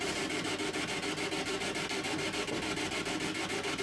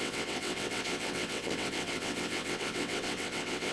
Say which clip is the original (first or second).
first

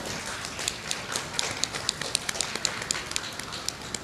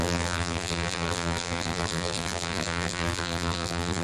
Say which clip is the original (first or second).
first